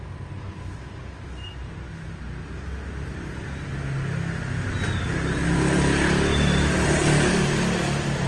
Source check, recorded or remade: recorded